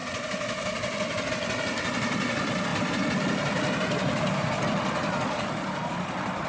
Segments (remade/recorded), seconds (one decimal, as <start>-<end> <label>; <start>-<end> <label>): 0.0-6.5 recorded

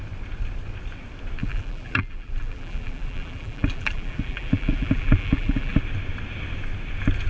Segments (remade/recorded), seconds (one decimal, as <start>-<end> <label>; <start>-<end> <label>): 0.0-1.4 recorded; 1.4-5.8 remade; 5.8-7.3 recorded